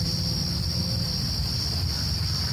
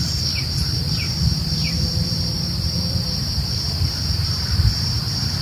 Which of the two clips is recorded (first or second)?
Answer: first